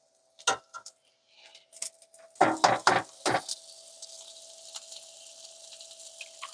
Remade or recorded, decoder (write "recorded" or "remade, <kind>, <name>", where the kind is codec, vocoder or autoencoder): recorded